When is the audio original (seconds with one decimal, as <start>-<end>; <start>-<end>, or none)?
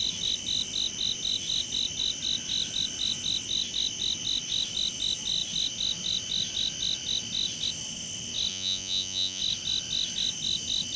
0.0-8.5; 9.4-11.0